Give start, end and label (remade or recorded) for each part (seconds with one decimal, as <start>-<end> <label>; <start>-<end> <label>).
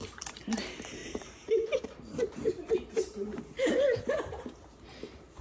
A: 0.0-5.4 remade